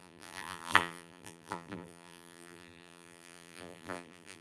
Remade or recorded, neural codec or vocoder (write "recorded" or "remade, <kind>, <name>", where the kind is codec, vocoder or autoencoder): remade, vocoder, BigVGAN v2